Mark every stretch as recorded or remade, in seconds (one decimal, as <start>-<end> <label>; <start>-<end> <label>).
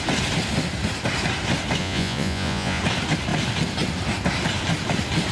0.0-1.8 recorded; 1.8-2.8 remade; 2.8-5.3 recorded